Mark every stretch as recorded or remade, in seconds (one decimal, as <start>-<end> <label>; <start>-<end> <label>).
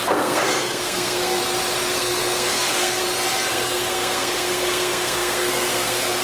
0.0-1.4 remade; 1.4-1.9 recorded; 1.9-3.0 remade; 3.0-3.5 recorded; 3.5-6.2 remade